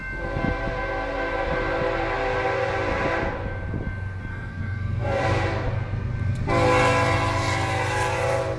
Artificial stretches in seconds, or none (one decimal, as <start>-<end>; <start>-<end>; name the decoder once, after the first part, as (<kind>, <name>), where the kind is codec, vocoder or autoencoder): 4.3-5.2 (codec, SNAC)